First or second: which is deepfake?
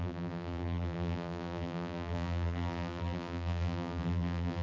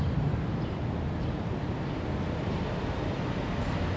first